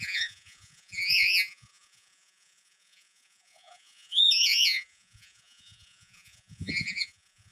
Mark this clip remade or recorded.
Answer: remade